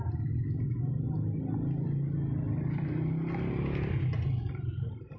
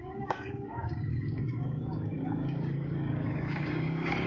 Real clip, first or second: first